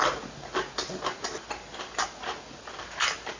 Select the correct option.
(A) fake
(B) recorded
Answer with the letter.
B